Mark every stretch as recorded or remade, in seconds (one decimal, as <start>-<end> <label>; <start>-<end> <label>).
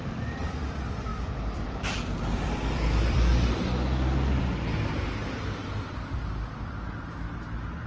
0.0-0.5 remade; 0.5-1.1 recorded; 1.1-4.4 remade; 4.4-5.2 recorded; 5.2-6.6 remade; 6.6-7.9 recorded